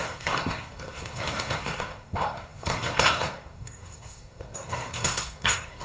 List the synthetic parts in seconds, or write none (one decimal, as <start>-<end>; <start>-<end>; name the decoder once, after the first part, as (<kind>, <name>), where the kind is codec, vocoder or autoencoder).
0.0-5.8 (codec, SNAC)